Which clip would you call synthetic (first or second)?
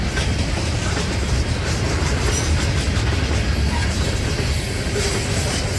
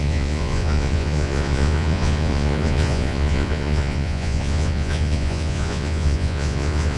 second